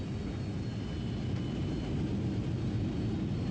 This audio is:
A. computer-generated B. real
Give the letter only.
B